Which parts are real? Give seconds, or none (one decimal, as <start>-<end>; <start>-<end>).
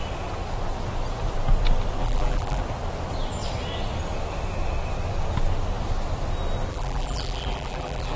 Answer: 0.0-2.0; 2.6-6.7